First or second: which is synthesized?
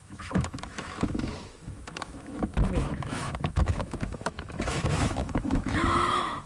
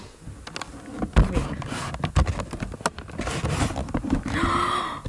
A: first